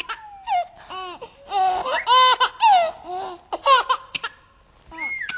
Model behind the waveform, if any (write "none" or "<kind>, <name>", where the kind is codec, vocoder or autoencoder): none